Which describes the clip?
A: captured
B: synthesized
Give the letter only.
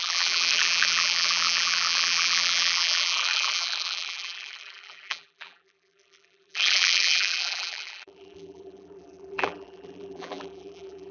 B